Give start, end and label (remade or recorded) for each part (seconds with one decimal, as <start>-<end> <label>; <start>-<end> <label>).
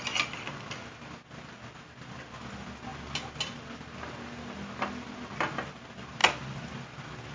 0.0-7.3 recorded